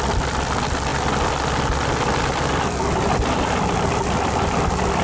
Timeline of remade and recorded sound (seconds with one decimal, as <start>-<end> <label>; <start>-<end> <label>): 0.0-5.0 recorded